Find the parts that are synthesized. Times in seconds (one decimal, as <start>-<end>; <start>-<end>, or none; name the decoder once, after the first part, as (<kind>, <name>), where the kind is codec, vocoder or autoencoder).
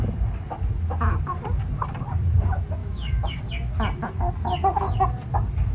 2.8-3.4 (autoencoder, DAC-VAE)